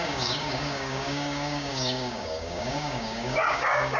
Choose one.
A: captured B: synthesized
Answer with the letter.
B